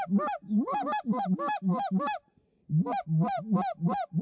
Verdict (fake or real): real